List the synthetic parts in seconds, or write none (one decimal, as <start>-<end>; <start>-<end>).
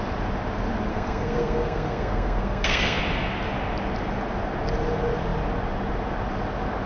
0.9-3.0